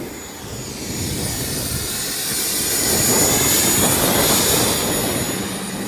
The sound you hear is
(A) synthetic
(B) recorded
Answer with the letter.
B